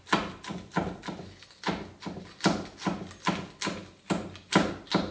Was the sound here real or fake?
real